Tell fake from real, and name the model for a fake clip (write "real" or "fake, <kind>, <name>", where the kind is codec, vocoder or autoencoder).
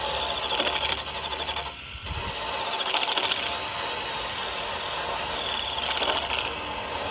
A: real